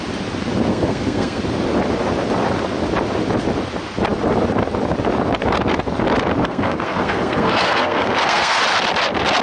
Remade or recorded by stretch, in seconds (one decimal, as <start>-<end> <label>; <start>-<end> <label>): 0.0-0.7 recorded; 0.7-1.4 remade; 1.4-6.4 recorded; 6.4-8.6 remade; 8.6-9.4 recorded